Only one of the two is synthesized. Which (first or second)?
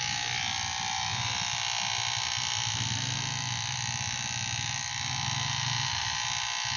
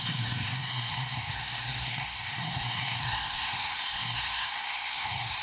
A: second